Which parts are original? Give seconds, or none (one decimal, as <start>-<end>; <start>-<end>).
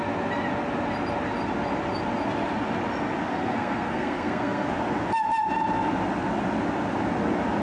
0.0-3.3; 4.7-7.6